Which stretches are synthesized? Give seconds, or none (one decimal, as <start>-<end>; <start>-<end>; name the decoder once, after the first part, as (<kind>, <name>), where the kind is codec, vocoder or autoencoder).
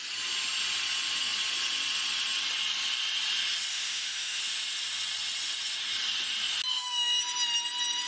3.7-4.4 (autoencoder, DAC-VAE); 6.7-7.2